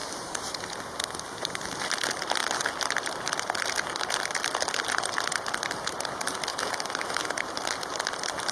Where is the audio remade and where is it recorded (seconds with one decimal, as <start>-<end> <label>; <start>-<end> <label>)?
0.0-6.5 recorded; 6.5-7.2 remade; 7.2-8.5 recorded